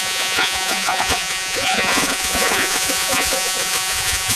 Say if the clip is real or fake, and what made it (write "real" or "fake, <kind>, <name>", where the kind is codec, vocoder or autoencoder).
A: fake, vocoder, Vocos